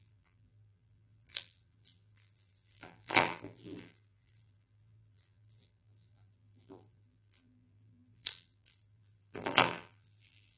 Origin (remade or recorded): remade